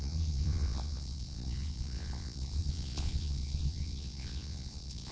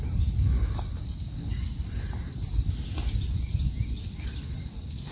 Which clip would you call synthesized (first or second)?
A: first